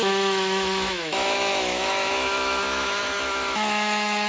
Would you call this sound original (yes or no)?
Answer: no